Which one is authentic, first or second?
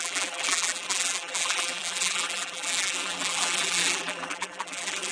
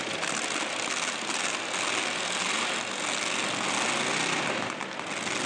second